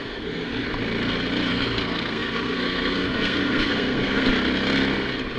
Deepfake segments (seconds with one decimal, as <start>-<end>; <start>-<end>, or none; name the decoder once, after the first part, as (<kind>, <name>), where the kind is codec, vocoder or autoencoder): 0.0-0.5 (codec, SNAC); 1.5-4.3